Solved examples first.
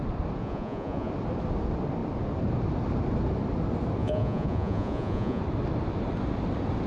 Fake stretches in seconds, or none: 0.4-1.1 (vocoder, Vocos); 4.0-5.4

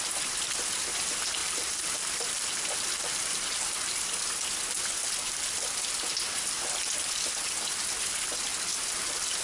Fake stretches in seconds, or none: 1.4-3.4 (vocoder, BigVGAN v2)

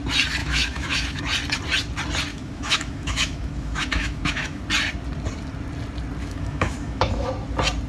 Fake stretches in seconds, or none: 0.4-1.2 (autoencoder, DAC-VAE); 2.3-4.6; 6.2-7.3

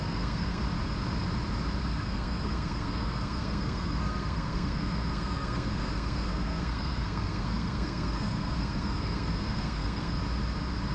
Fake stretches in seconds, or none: 0.0-0.6 (codec, SNAC); 1.8-10.2

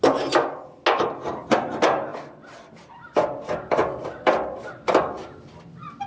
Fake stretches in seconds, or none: 2.1-2.7 (vocoder, BigVGAN v2); 3.8-5.0

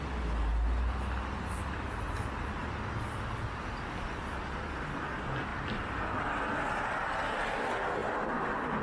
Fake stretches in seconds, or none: 2.6-3.3 (vocoder, BigVGAN v2); 5.5-6.2; 8.0-8.8

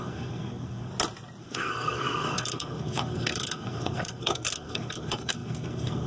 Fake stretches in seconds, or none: 0.0-0.9 (codec, SNAC); 1.4-6.1